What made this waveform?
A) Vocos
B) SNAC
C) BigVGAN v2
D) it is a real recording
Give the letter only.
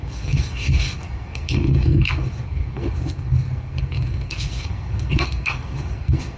B